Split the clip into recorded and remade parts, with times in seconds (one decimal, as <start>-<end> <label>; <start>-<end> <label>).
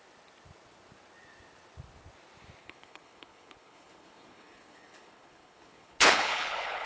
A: 0.0-2.6 recorded; 2.6-6.9 remade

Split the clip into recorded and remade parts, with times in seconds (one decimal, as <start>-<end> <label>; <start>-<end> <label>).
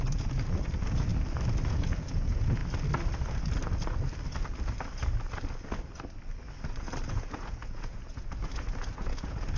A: 0.0-1.1 remade; 1.1-1.7 recorded; 1.7-2.6 remade; 2.6-7.1 recorded; 7.1-9.6 remade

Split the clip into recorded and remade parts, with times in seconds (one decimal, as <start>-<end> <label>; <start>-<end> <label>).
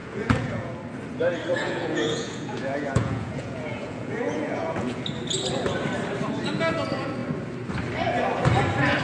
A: 0.0-0.7 remade; 0.7-1.5 recorded; 1.5-5.0 remade; 5.0-9.0 recorded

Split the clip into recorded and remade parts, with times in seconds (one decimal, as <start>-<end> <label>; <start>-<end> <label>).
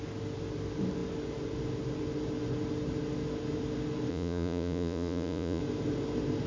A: 0.0-4.1 recorded; 4.1-5.6 remade; 5.6-6.5 recorded